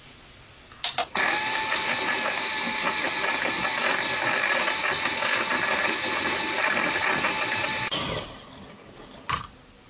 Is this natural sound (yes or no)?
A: yes